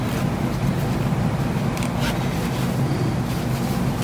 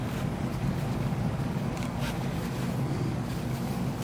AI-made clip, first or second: second